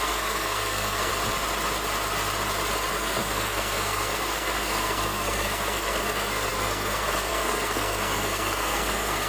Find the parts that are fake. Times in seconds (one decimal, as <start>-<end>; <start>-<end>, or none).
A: 0.0-1.1; 2.9-9.3